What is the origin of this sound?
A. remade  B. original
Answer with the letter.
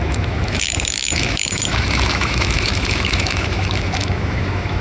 A